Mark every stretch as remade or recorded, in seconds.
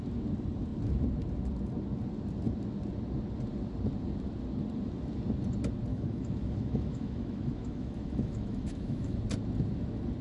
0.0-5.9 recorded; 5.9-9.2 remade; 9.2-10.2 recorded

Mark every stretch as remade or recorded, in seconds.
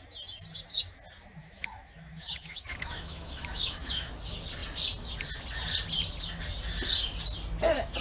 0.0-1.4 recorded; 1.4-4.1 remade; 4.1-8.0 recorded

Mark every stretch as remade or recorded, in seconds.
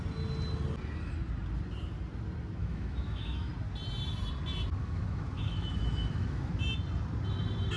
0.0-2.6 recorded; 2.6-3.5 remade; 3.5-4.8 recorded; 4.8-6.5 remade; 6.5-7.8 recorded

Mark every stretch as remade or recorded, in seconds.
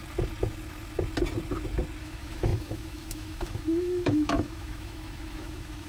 0.0-2.0 recorded; 2.0-5.9 remade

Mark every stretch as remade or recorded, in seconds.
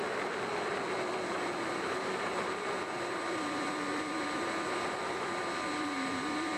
0.0-6.6 recorded